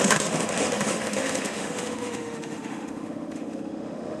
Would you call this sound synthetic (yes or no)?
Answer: yes